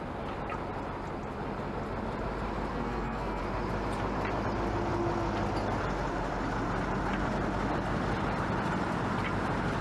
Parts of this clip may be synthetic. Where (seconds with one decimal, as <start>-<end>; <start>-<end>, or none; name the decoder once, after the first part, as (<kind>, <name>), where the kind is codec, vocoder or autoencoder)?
2.7-3.4 (codec, SNAC)